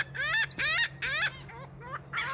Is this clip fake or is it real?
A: real